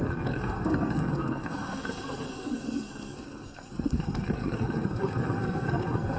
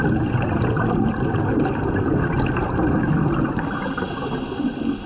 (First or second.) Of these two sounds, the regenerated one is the first